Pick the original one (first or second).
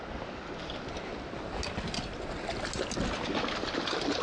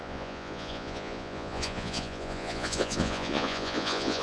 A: first